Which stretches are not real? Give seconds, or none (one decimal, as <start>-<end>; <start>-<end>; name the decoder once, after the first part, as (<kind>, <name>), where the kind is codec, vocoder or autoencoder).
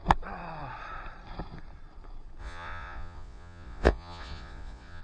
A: 2.4-5.0 (vocoder, Vocos)